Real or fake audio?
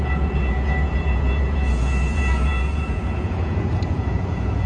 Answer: fake